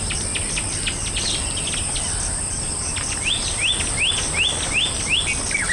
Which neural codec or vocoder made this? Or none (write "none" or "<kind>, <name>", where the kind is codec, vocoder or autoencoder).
none